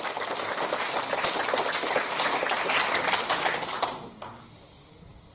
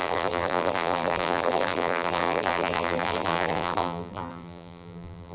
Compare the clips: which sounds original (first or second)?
first